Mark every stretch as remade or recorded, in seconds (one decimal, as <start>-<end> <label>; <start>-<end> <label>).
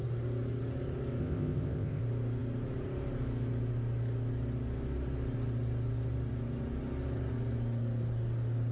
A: 0.0-1.2 recorded; 1.2-2.0 remade; 2.0-8.7 recorded